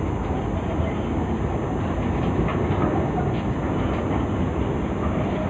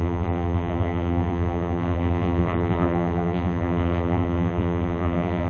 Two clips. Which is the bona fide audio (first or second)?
first